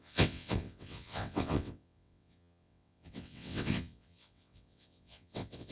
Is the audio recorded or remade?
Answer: remade